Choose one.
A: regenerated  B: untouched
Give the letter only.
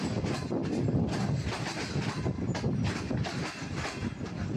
B